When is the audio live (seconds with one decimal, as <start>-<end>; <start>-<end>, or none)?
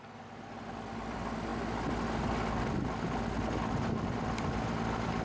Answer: 0.0-5.2